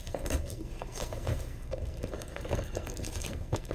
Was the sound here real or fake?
fake